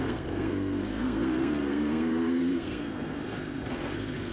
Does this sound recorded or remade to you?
remade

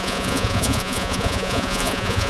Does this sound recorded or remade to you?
remade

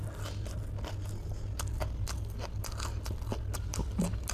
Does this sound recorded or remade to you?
recorded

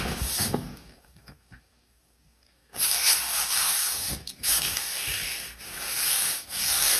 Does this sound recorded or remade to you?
remade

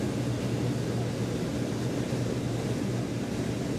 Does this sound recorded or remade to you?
recorded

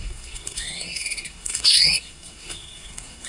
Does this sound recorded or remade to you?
remade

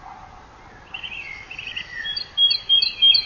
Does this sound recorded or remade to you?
recorded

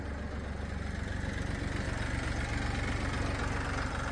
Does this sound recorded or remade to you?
recorded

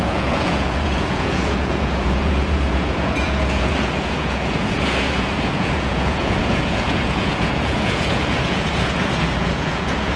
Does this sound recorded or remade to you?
remade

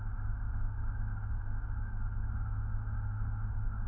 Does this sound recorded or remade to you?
remade